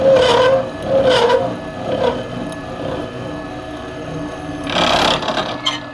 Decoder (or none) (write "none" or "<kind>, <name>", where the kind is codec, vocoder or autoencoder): none